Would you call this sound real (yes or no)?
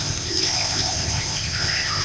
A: no